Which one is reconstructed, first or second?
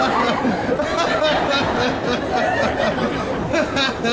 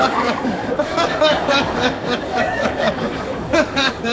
second